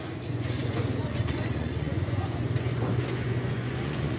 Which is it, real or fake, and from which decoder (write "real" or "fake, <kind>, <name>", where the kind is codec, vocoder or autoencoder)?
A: fake, vocoder, Vocos